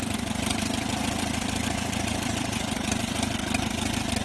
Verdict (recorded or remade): remade